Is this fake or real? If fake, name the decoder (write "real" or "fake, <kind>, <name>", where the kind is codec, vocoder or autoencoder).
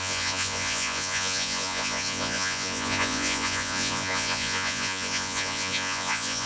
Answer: fake, vocoder, Vocos